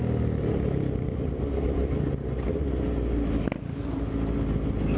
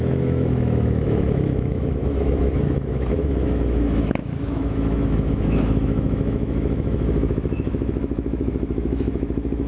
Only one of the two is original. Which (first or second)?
first